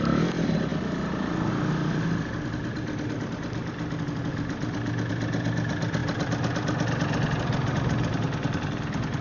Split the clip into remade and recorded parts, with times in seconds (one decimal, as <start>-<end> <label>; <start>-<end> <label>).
0.0-9.2 recorded